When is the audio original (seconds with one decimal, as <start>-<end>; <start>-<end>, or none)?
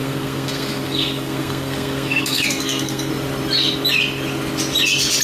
3.1-5.2